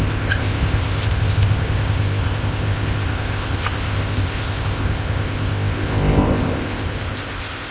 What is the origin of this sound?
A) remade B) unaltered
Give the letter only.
A